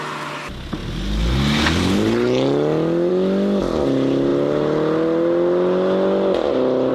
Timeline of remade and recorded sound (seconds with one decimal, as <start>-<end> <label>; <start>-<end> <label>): 0.0-6.9 recorded